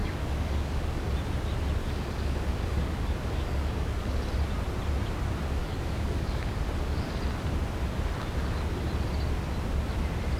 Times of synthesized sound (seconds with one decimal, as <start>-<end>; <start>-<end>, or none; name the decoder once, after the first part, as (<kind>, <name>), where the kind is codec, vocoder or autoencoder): 0.0-1.1 (codec, DAC); 1.8-4.3; 5.6-7.2